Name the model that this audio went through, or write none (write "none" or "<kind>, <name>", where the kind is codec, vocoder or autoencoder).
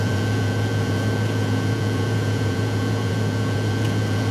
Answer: vocoder, Vocos